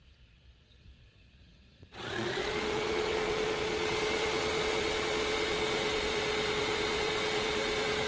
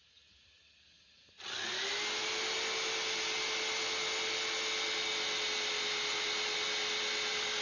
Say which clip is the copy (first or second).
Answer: first